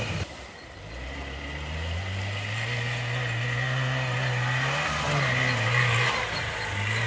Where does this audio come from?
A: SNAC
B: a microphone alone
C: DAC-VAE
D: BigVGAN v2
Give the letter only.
B